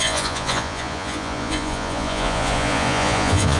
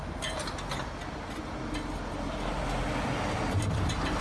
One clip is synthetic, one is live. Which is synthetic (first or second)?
first